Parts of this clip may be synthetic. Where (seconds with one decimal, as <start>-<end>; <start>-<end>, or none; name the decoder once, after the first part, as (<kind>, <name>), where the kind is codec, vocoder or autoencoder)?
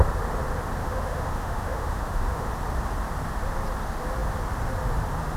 0.8-2.5 (autoencoder, DAC-VAE)